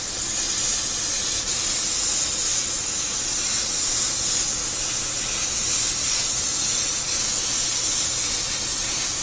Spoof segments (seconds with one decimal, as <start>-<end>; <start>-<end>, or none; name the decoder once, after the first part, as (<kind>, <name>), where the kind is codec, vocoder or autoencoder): none